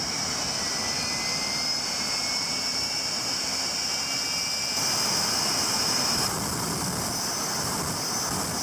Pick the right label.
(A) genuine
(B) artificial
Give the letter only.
A